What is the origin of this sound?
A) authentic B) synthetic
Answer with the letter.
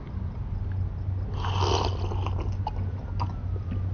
A